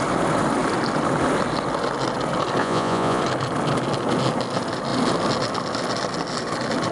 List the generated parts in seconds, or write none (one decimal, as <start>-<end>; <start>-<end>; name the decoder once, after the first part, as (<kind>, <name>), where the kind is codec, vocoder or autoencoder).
2.6-3.2 (vocoder, Vocos)